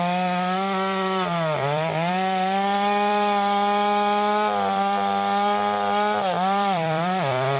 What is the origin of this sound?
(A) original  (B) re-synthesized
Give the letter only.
B